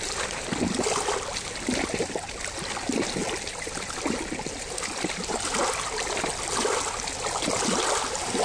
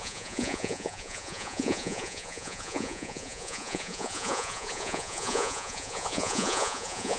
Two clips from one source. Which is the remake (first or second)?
second